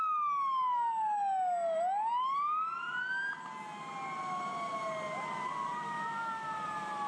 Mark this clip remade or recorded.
recorded